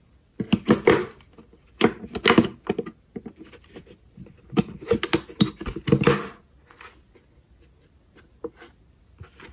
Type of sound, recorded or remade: recorded